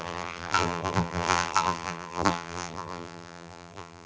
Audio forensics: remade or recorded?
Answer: remade